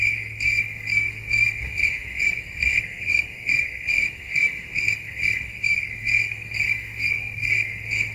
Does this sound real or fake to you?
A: fake